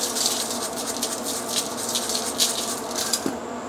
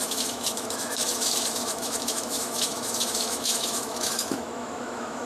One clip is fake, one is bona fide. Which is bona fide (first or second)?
first